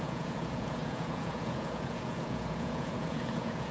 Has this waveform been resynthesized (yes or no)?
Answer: yes